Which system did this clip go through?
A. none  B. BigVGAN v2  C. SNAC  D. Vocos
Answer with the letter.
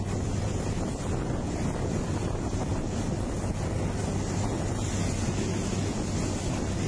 A